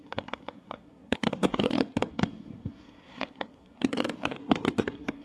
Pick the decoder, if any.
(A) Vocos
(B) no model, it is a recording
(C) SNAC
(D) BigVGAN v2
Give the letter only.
C